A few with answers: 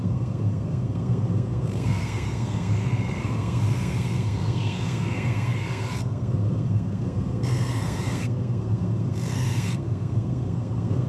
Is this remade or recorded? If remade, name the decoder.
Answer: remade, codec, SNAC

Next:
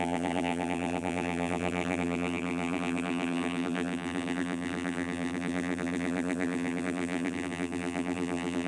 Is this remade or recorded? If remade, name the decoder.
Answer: remade, vocoder, BigVGAN v2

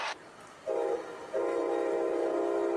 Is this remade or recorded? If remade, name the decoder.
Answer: recorded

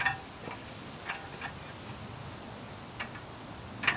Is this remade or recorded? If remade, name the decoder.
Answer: recorded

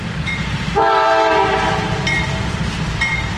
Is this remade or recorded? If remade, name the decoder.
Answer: remade, vocoder, BigVGAN v2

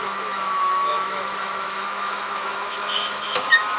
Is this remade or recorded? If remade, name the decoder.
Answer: remade, autoencoder, DAC-VAE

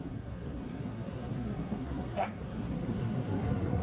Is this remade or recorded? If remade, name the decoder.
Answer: remade, codec, SNAC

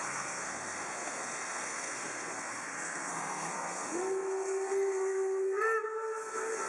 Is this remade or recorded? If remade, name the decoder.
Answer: remade, codec, SNAC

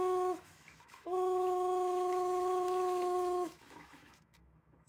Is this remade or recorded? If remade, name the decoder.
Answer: remade, autoencoder, DAC-VAE